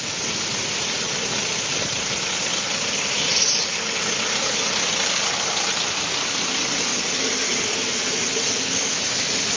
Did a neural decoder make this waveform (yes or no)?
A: no